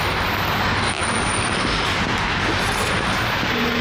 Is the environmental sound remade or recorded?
recorded